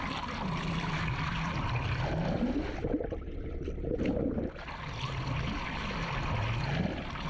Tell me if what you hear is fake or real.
real